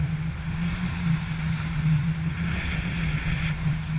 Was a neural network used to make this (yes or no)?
no